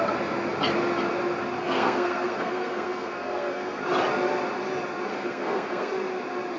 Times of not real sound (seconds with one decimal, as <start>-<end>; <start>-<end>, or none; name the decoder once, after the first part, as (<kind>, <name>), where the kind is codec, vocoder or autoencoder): 1.6-3.8 (codec, SNAC); 5.1-5.9